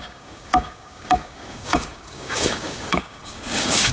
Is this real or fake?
fake